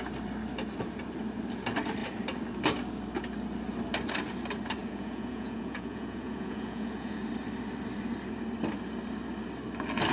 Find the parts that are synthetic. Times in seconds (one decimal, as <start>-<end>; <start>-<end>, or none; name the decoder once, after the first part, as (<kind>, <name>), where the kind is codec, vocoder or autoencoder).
4.8-7.2 (vocoder, Vocos)